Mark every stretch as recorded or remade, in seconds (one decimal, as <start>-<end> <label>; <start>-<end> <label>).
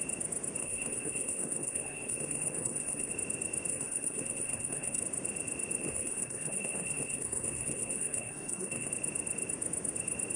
0.0-0.6 recorded; 0.6-3.1 remade; 3.1-3.7 recorded; 3.7-5.0 remade; 5.0-5.8 recorded; 5.8-8.9 remade; 8.9-10.4 recorded